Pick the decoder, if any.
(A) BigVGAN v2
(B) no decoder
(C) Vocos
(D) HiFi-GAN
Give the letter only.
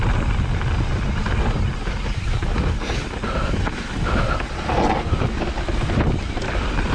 B